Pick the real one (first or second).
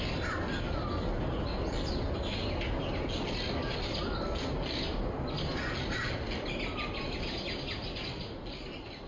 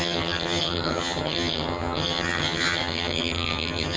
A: first